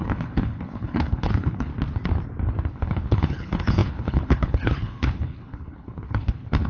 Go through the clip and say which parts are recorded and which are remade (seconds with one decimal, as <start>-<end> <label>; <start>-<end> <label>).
0.0-1.7 remade; 1.7-2.7 recorded; 2.7-6.7 remade